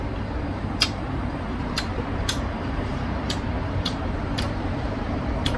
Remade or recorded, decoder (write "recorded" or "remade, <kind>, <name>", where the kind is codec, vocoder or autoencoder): remade, vocoder, BigVGAN v2